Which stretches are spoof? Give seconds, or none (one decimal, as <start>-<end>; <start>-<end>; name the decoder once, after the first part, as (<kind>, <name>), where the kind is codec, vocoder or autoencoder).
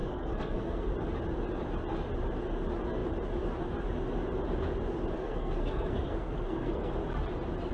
0.0-0.9 (codec, SNAC); 5.2-6.9